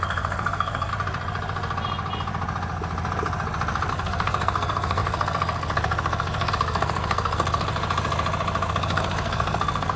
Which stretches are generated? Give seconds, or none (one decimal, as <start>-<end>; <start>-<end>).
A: 0.0-0.9; 3.9-7.7; 8.7-10.0